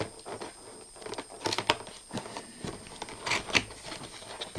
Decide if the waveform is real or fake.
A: real